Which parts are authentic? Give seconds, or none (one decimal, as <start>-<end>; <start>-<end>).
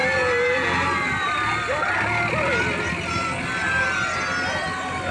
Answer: 0.0-5.1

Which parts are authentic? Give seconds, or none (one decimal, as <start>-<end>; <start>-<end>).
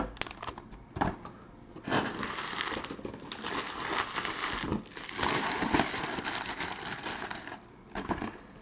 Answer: 0.0-8.6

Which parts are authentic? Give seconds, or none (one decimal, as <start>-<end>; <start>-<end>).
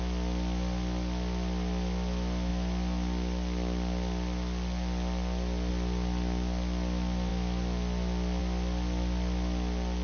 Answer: 0.0-10.0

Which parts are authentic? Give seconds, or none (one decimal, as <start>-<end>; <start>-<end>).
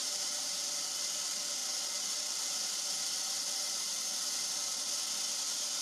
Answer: 0.5-5.8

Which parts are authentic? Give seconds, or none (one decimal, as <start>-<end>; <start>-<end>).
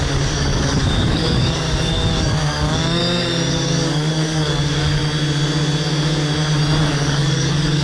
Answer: 3.0-3.5; 5.0-6.9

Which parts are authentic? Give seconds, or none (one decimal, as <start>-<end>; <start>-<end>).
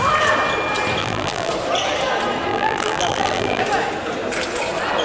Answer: 0.0-1.0; 1.5-2.5; 3.6-5.0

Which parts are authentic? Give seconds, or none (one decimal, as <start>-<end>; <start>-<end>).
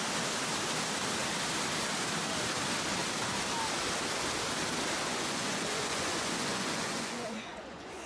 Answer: 0.0-5.0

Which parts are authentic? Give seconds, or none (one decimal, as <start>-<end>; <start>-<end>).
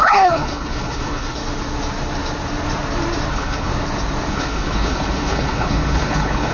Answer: 1.4-3.3; 3.7-4.3